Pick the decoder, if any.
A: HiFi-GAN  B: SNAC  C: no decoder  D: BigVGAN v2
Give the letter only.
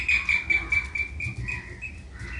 C